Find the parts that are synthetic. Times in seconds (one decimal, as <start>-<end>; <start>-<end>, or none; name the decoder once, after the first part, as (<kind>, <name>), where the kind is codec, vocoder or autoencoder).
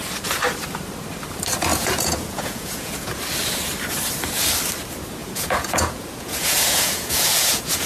1.7-3.2 (vocoder, Vocos); 5.2-7.9